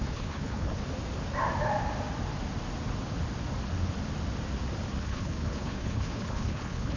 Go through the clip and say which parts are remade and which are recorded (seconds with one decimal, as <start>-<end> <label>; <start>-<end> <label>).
0.0-0.8 remade; 0.8-5.0 recorded; 5.0-7.0 remade